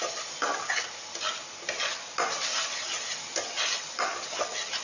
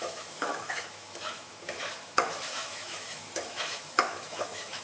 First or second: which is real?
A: first